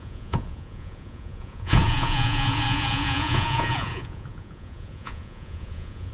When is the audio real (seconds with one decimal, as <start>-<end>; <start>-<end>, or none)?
none